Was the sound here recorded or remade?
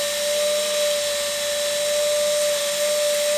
recorded